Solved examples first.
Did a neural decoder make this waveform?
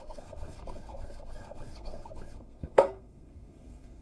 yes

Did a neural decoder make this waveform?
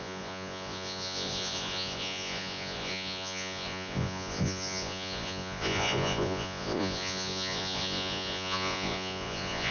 yes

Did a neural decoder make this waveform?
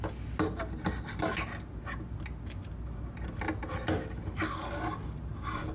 no